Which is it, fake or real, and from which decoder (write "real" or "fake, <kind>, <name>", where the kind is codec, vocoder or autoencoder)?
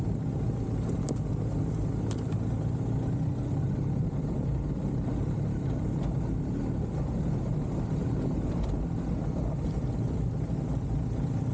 real